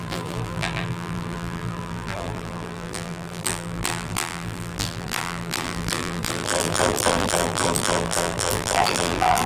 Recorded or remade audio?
remade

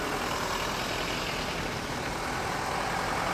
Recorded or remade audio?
recorded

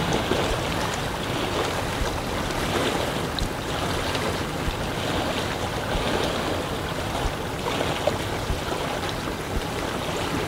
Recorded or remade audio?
recorded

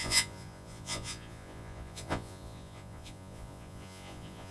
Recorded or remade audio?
remade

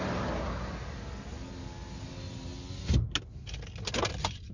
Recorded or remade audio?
recorded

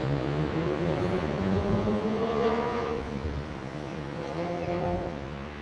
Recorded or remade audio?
remade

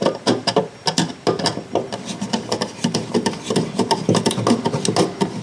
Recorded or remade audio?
recorded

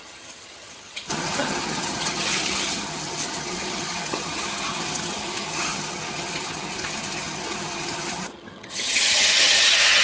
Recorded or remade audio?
remade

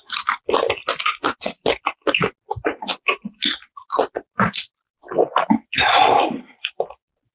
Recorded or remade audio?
recorded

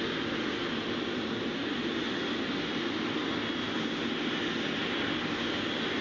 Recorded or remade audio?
recorded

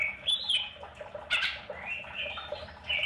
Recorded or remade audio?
remade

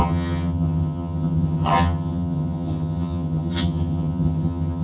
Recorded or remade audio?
remade